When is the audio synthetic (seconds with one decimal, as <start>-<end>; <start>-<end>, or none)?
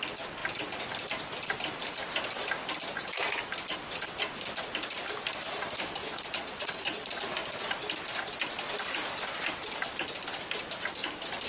6.0-7.2